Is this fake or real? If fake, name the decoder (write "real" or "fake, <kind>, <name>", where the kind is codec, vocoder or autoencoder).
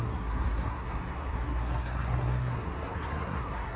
fake, codec, SNAC